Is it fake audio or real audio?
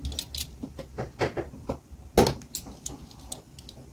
real